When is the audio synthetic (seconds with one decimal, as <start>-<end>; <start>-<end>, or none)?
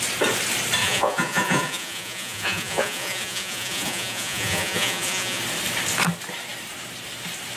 0.8-5.4